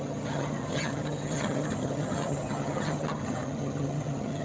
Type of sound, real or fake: fake